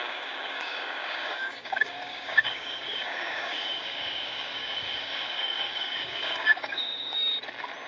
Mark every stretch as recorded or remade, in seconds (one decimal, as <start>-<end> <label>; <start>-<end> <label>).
0.0-7.3 remade; 7.3-7.9 recorded